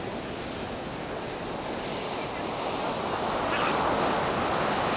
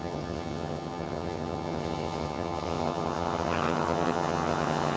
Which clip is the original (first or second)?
first